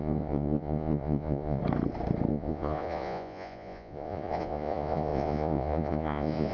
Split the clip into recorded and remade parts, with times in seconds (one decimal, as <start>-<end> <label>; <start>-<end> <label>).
0.0-1.6 remade; 1.6-2.3 recorded; 2.3-6.5 remade